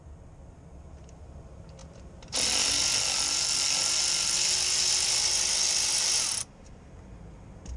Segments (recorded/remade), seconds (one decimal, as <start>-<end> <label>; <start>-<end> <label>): 0.0-7.8 recorded